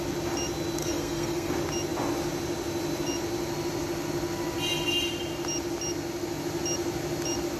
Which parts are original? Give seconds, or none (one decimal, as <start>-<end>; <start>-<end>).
0.0-0.8; 1.5-7.6